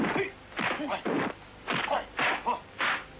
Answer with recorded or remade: recorded